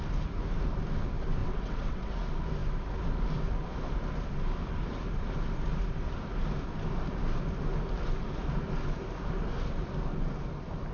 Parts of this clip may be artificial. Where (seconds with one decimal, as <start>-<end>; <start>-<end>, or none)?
1.4-2.1

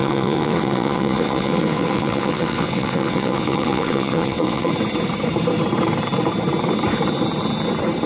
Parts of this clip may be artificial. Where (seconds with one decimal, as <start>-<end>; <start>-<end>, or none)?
0.0-4.7

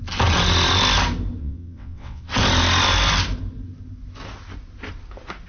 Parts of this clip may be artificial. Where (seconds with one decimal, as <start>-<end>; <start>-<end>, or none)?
1.4-2.3

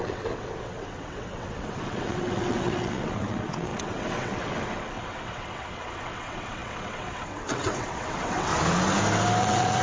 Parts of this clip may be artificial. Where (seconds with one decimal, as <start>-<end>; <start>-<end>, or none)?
0.0-8.5; 9.4-9.8

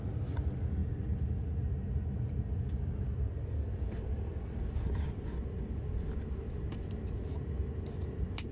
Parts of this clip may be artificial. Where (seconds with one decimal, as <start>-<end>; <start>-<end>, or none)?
none

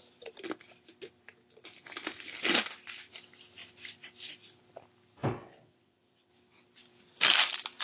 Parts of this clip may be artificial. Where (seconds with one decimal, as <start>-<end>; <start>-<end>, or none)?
5.3-6.3

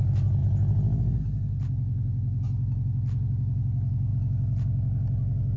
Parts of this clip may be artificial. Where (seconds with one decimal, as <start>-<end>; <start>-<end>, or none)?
none

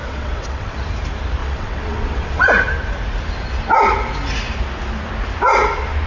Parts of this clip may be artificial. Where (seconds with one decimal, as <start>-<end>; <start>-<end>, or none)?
0.0-0.8; 1.4-2.4